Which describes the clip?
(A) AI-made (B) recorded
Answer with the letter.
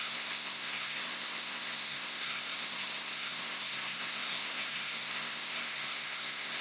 A